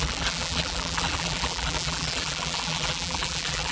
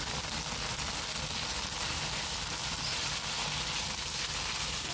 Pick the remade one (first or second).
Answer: first